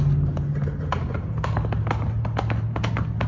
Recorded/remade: recorded